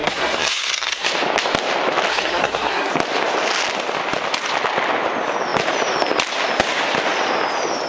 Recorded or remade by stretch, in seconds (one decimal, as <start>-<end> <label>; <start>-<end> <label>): 0.0-1.1 remade; 1.1-2.1 recorded; 2.1-2.9 remade; 2.9-7.9 recorded